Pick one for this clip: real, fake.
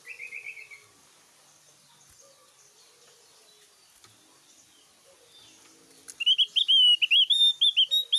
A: real